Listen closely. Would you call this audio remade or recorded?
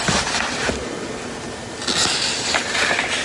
recorded